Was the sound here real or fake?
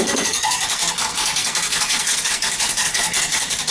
fake